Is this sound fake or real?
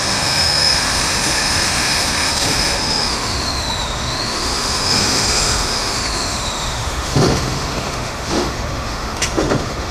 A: fake